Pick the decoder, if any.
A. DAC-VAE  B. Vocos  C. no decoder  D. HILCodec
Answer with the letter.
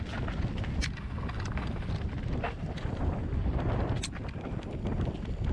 C